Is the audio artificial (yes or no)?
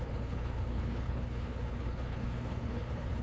yes